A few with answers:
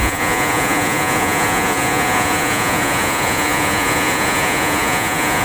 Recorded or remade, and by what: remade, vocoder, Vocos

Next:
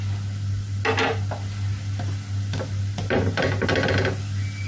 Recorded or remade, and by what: recorded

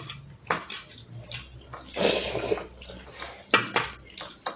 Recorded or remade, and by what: recorded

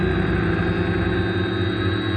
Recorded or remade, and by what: recorded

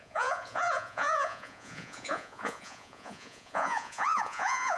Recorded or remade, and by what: remade, vocoder, Vocos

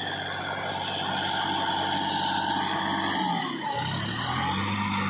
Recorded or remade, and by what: recorded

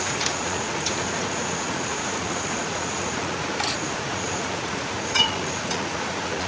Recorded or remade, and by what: remade, vocoder, Vocos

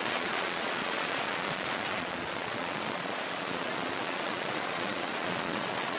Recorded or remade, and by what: remade, vocoder, Vocos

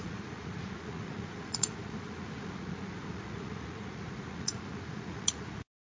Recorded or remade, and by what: remade, vocoder, Vocos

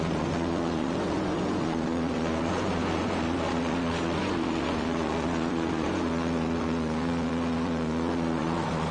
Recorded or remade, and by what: remade, vocoder, Vocos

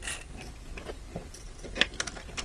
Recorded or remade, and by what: recorded